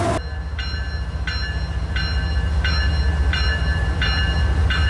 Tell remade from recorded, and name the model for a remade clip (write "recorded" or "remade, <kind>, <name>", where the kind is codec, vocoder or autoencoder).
recorded